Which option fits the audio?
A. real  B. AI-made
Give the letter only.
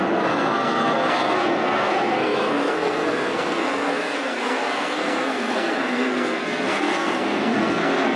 B